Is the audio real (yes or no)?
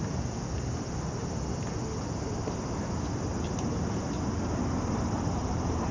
yes